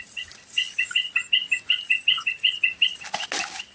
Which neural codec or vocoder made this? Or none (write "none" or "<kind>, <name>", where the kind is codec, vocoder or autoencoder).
none